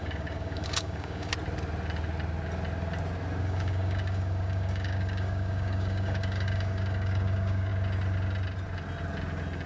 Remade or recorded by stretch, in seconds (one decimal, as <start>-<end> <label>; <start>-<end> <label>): 0.0-1.3 remade; 1.3-3.4 recorded; 3.4-7.7 remade; 7.7-9.7 recorded